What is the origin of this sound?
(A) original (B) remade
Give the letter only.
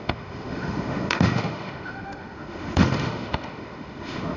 B